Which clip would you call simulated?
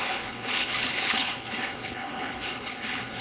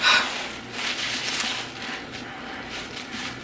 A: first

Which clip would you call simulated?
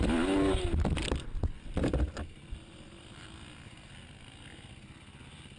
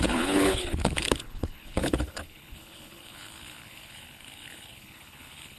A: second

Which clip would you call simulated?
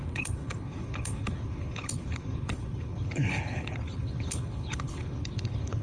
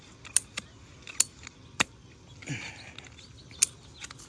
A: first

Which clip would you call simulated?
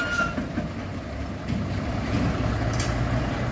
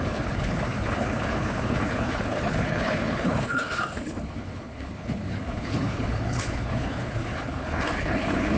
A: second